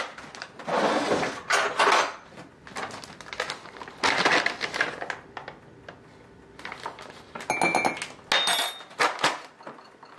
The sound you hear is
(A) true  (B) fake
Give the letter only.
A